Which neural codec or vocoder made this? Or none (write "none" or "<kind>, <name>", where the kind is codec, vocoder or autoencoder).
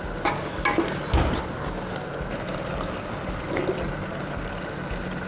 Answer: none